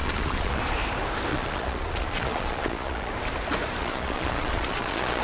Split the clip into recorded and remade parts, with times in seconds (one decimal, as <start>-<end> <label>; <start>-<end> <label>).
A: 0.0-0.6 remade; 0.6-1.3 recorded; 1.3-3.1 remade; 3.1-3.8 recorded; 3.8-5.2 remade